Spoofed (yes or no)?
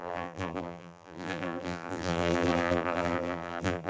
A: yes